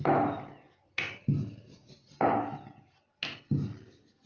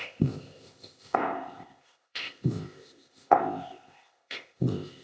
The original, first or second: first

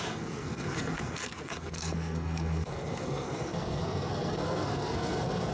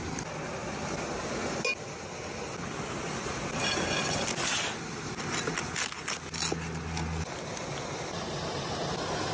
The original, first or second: second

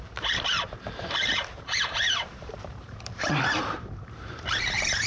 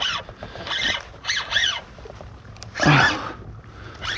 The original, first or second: second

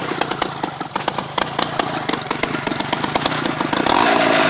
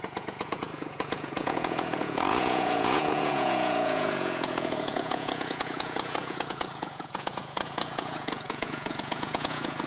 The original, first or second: first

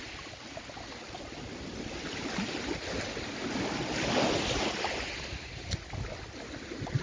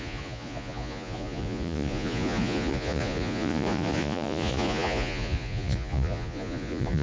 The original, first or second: first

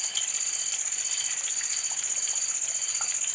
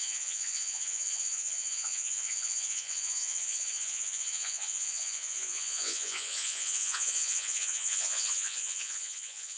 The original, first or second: first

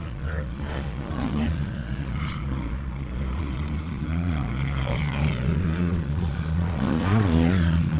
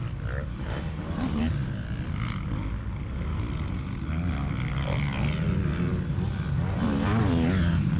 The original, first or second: second